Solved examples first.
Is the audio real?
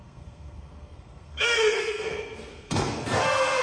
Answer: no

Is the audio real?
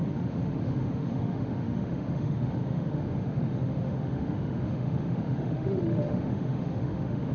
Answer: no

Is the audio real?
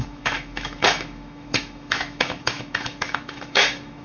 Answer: no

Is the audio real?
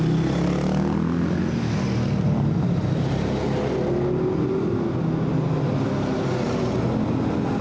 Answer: yes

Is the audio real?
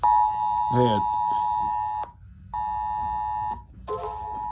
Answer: yes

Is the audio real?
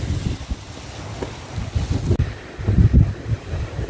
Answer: yes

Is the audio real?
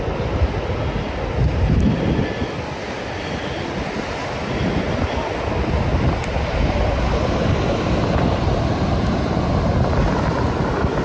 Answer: yes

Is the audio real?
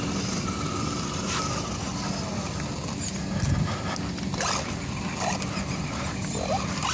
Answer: yes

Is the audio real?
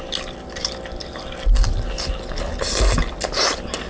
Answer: yes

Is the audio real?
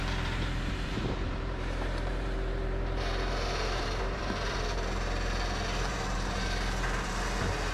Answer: no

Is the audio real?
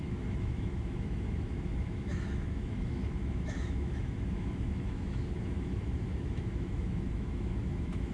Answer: no